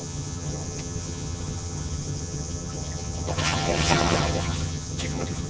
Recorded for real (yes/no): no